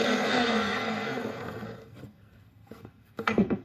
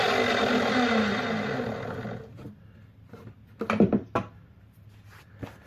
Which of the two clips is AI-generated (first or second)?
first